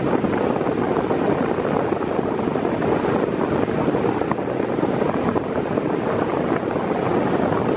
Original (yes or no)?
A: yes